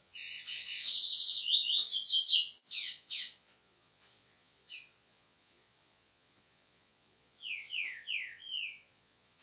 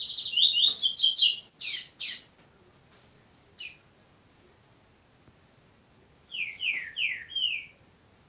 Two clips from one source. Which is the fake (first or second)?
first